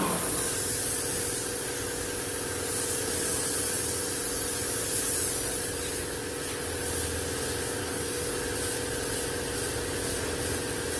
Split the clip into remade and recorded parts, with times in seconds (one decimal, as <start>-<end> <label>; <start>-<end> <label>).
0.0-7.8 recorded; 7.8-8.3 remade; 8.3-11.0 recorded